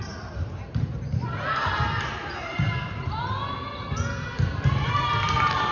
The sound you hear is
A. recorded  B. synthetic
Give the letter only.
A